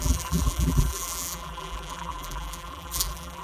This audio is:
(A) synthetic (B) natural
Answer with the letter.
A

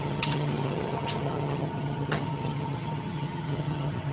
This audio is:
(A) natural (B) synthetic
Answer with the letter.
B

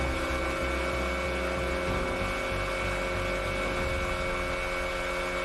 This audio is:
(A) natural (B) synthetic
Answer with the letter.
A